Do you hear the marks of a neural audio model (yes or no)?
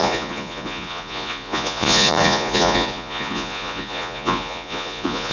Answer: yes